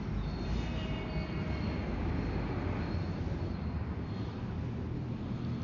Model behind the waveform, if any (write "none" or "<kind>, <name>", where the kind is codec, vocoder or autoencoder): none